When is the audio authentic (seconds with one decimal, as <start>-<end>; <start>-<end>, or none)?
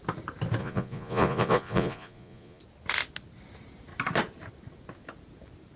0.0-0.6; 2.6-5.8